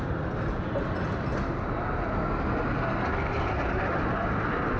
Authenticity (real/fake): real